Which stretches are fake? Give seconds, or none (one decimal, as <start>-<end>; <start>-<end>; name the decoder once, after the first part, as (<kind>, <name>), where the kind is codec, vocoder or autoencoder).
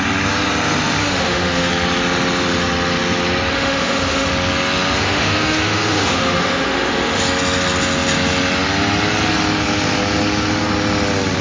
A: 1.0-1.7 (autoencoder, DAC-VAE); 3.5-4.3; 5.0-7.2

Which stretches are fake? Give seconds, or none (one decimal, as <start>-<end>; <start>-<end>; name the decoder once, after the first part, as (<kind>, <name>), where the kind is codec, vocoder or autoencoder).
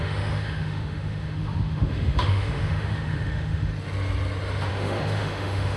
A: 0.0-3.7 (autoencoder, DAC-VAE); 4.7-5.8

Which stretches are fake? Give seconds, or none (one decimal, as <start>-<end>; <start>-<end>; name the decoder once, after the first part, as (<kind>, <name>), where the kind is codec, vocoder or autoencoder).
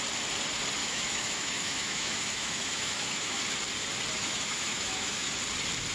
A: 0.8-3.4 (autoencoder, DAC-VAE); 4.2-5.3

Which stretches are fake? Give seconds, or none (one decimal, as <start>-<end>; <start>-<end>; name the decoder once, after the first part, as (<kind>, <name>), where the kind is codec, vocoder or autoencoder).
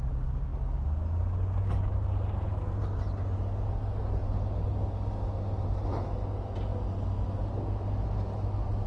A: none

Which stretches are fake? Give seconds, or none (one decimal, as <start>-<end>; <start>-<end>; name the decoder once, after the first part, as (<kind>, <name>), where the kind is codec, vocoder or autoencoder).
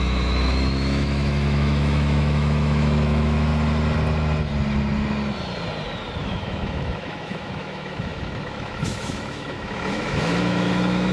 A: 0.0-3.5 (autoencoder, DAC-VAE); 6.2-11.1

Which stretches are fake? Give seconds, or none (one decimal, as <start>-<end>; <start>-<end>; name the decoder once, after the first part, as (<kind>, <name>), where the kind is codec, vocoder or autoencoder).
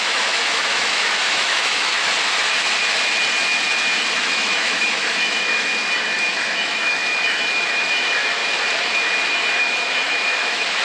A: 0.0-1.9 (autoencoder, DAC-VAE); 4.2-5.7; 6.3-8.4; 9.6-10.8